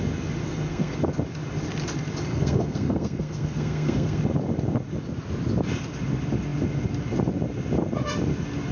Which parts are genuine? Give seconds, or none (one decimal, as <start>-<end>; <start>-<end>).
0.0-0.4; 1.0-2.3; 4.2-8.7